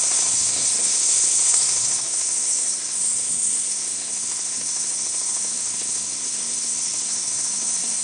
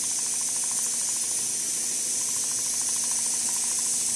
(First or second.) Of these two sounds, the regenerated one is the first